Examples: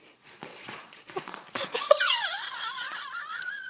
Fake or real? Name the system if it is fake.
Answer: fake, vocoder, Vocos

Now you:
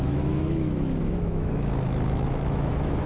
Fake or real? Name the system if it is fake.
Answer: fake, autoencoder, DAC-VAE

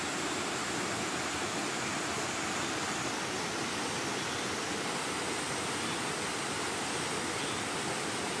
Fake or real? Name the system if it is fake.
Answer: real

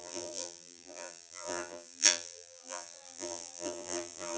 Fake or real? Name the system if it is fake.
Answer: fake, vocoder, BigVGAN v2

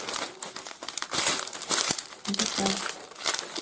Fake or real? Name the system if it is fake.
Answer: real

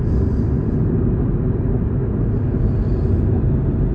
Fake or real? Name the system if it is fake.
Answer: real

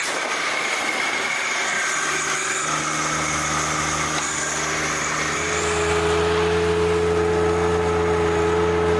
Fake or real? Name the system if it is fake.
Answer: real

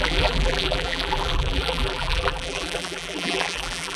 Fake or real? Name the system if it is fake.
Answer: fake, vocoder, BigVGAN v2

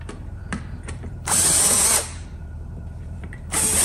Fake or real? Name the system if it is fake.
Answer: fake, vocoder, BigVGAN v2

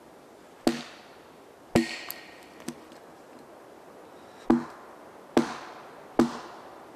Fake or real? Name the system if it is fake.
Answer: real